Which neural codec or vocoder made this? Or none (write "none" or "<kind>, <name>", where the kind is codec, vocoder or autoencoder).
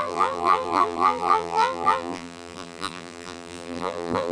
vocoder, BigVGAN v2